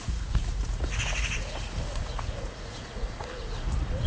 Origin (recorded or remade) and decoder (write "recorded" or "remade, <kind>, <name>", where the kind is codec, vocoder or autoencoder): remade, vocoder, Vocos